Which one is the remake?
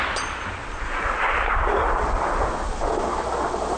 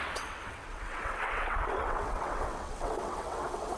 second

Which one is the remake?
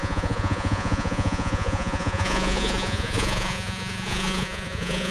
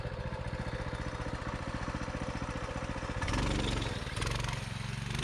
first